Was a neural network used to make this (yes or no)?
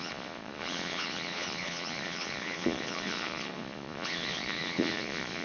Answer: yes